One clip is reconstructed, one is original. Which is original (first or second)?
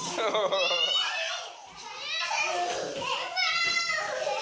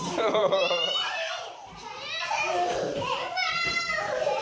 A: first